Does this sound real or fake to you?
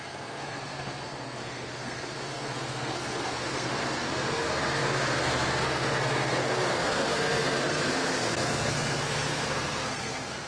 fake